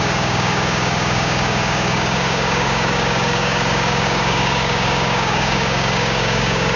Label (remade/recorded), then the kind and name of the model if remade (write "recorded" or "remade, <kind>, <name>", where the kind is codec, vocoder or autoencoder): remade, codec, DAC